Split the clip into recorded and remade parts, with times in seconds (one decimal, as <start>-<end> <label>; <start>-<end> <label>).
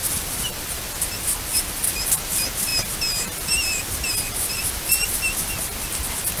0.0-6.4 recorded